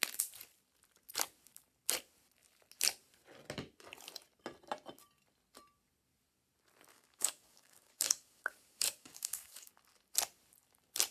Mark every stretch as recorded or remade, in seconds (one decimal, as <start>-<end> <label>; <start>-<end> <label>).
0.0-6.9 recorded; 6.9-9.7 remade; 9.7-11.1 recorded